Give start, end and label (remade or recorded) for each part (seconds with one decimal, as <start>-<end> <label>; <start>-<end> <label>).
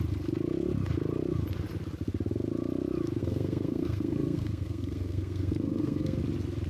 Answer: 0.0-3.2 recorded; 3.2-6.2 remade; 6.2-6.7 recorded